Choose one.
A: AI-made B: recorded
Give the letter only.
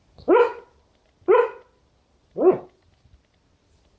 B